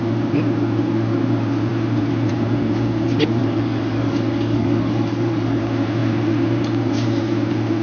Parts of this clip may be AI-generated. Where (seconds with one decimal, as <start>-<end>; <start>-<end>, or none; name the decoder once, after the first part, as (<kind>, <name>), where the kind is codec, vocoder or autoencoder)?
3.4-5.6 (codec, DAC)